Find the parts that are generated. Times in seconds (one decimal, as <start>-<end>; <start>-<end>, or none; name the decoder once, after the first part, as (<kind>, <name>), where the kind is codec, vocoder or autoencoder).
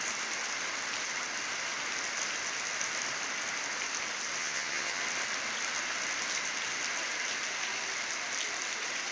4.4-5.0 (vocoder, HiFi-GAN)